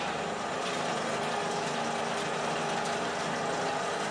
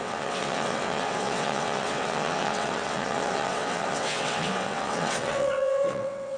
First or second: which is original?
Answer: first